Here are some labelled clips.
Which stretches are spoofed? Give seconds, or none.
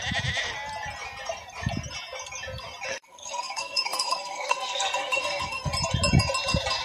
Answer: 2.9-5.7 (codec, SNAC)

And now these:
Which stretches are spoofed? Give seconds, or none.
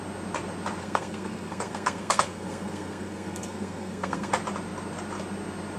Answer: 0.8-4.3 (codec, SNAC)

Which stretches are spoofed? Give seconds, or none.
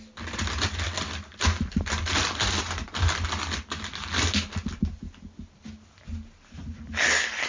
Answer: none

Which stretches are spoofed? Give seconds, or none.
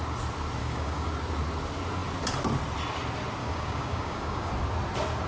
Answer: 0.6-1.1 (codec, DAC); 3.4-4.5